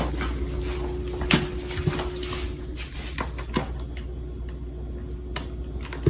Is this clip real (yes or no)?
yes